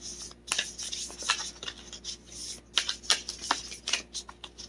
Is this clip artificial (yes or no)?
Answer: no